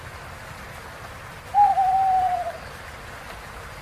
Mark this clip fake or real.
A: real